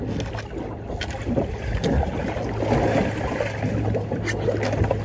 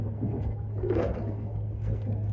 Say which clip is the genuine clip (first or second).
first